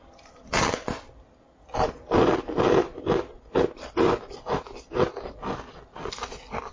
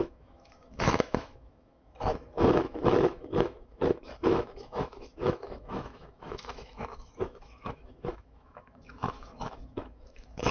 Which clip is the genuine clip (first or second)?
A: first